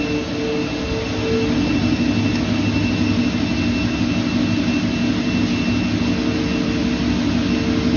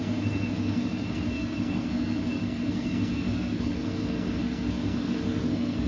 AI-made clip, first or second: second